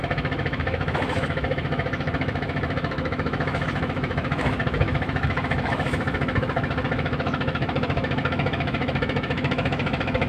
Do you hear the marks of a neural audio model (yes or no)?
yes